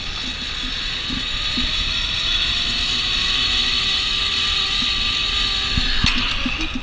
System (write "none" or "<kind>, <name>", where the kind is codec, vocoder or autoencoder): none